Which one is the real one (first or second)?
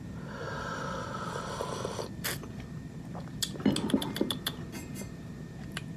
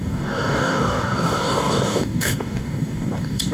first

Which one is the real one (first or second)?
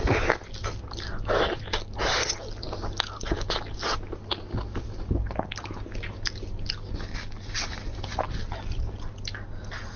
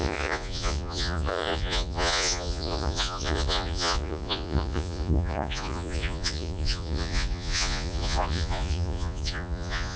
first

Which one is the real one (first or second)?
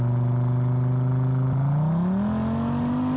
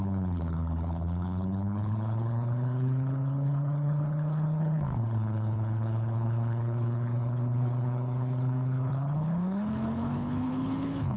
first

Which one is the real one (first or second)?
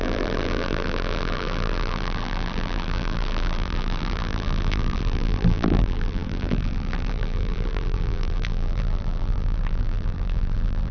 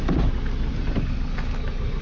second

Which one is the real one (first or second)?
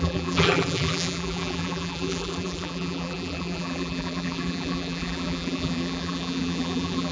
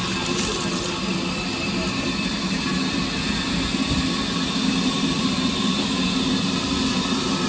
second